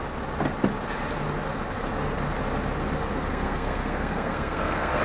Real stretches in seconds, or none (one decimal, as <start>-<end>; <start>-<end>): 0.0-3.3